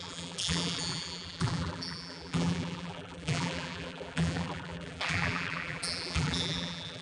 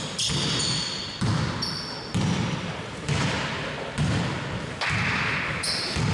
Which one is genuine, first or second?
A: second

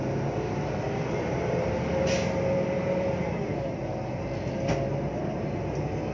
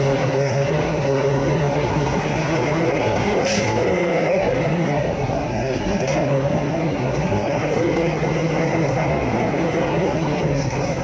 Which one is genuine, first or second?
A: first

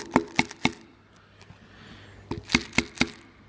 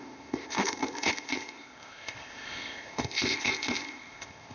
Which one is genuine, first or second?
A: first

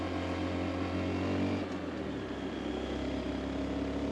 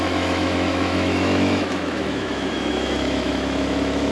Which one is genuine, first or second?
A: first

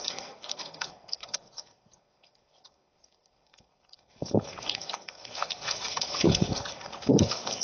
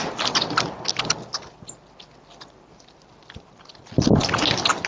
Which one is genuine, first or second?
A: second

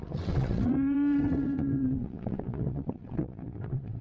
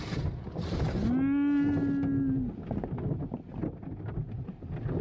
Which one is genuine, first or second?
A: second